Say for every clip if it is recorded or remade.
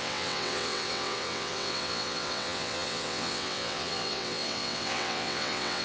remade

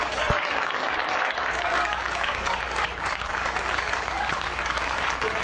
remade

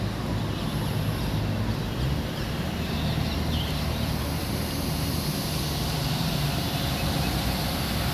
recorded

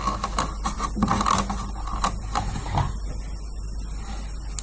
recorded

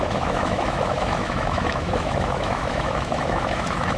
remade